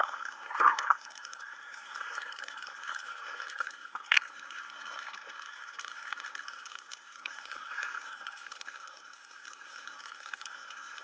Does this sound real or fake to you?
fake